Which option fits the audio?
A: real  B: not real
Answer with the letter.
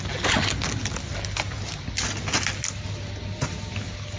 A